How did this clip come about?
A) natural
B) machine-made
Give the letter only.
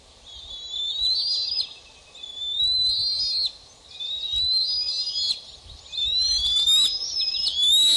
A